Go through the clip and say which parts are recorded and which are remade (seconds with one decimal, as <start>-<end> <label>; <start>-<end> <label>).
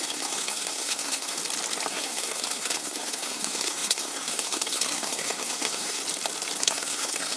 0.0-1.4 remade; 1.4-1.9 recorded; 1.9-6.0 remade; 6.0-6.6 recorded; 6.6-7.4 remade